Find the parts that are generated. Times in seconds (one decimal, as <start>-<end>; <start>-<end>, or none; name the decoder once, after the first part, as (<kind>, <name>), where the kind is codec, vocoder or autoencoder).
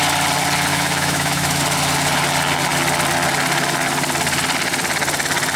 0.7-1.6 (autoencoder, DAC-VAE)